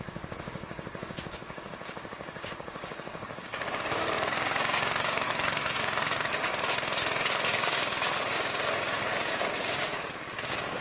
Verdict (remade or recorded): remade